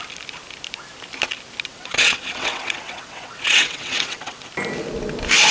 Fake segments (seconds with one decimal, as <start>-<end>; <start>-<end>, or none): 1.7-4.5